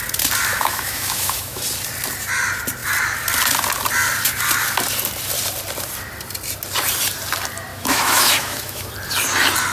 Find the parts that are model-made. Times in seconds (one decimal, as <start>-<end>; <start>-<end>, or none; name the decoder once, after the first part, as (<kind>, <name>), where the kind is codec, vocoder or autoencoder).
0.5-1.6 (autoencoder, DAC-VAE); 7.7-8.9